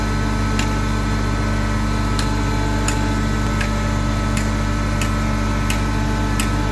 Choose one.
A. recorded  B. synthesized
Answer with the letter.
A